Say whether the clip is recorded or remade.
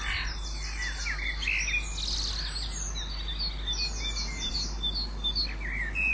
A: recorded